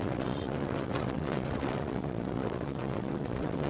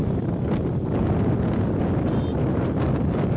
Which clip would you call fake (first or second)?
first